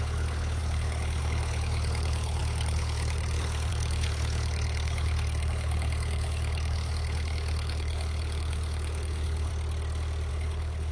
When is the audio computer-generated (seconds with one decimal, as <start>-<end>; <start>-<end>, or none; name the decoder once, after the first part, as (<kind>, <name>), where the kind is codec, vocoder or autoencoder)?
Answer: 0.0-9.5 (codec, HILCodec); 10.3-10.9